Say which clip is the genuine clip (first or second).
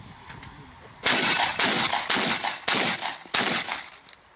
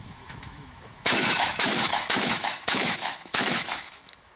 first